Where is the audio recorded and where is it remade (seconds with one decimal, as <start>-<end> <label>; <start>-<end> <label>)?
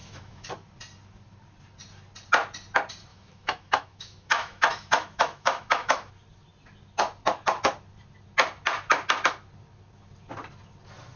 0.0-0.5 remade; 0.5-3.1 recorded; 3.1-6.1 remade; 6.1-11.2 recorded